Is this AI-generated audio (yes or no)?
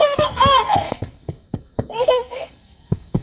yes